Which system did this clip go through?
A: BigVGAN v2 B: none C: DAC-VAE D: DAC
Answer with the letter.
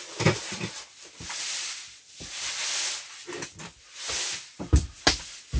B